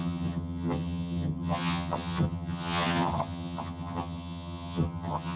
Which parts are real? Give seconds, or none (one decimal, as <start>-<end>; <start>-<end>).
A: none